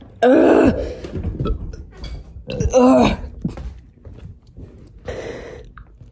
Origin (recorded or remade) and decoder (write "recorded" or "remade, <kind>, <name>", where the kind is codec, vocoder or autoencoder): recorded